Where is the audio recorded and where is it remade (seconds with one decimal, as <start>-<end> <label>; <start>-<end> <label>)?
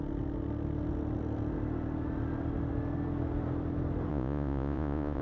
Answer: 0.0-4.1 recorded; 4.1-5.2 remade